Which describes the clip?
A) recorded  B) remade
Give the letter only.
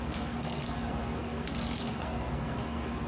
B